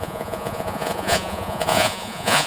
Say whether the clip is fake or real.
fake